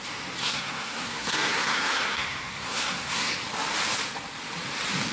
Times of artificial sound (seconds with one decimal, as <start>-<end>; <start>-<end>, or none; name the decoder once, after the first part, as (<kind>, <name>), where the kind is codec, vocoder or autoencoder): 0.4-3.3 (codec, SNAC)